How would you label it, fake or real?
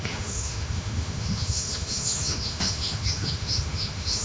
fake